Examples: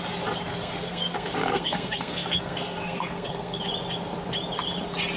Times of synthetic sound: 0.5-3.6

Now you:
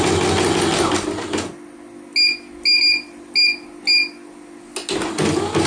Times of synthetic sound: none

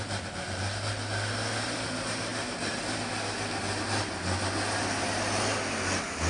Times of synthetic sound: none

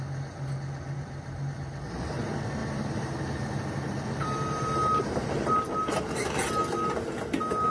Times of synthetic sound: 2.6-6.5

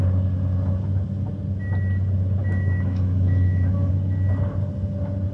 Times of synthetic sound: 2.4-3.9